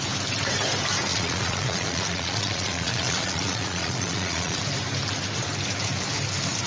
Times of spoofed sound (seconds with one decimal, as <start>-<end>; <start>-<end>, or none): 1.1-4.6